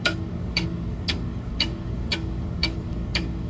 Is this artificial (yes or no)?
yes